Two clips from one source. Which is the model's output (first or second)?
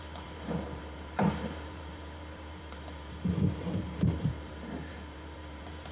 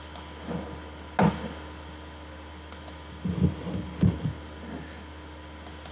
first